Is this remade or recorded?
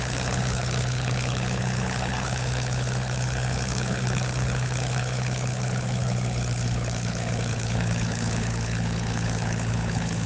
remade